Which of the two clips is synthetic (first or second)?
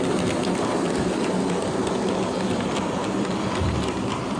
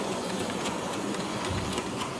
second